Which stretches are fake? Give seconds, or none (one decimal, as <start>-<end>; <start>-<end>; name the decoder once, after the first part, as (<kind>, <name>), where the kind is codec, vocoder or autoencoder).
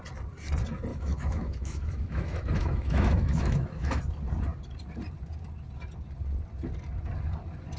0.9-4.0 (autoencoder, DAC-VAE)